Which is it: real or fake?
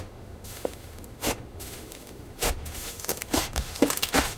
fake